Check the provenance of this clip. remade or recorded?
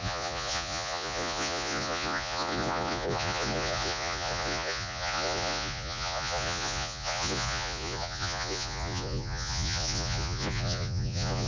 remade